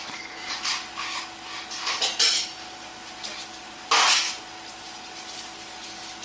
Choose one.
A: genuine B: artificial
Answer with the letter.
A